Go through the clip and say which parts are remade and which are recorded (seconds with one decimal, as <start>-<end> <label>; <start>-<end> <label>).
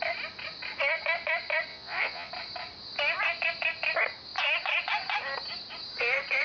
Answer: 0.0-1.7 recorded; 1.7-2.3 remade; 2.3-6.4 recorded